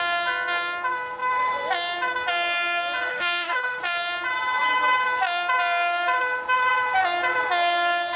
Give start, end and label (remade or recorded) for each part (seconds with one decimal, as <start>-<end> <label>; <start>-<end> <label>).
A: 0.0-3.1 recorded; 3.1-3.8 remade; 3.8-8.2 recorded